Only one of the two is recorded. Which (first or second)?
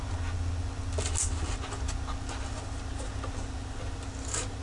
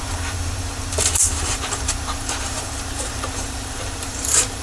first